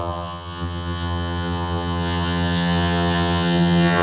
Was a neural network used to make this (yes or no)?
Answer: yes